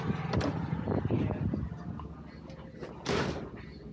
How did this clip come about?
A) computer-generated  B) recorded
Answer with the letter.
B